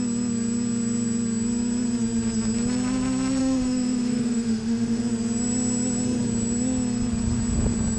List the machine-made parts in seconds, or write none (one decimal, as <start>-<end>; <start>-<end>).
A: 3.4-5.0